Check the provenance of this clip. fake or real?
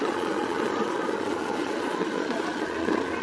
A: fake